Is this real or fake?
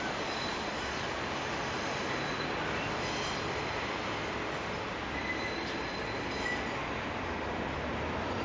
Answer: real